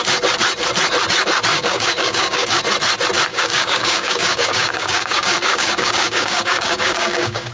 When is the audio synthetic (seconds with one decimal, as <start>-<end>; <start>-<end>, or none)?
1.5-2.6; 3.3-7.5